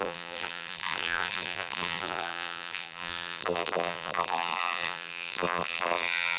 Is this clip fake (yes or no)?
yes